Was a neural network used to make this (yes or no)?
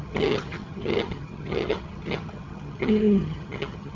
yes